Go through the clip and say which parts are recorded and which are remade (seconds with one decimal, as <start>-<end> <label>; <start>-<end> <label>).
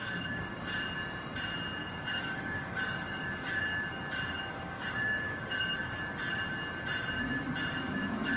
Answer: 0.0-0.5 remade; 0.5-1.8 recorded; 1.8-3.6 remade; 3.6-4.5 recorded; 4.5-6.0 remade; 6.0-8.4 recorded